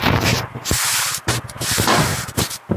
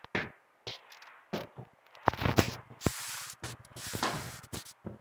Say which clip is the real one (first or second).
second